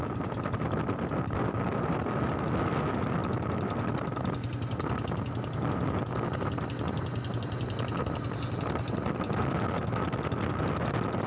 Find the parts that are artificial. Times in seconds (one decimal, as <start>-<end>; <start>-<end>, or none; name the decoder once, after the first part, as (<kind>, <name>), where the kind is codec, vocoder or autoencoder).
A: none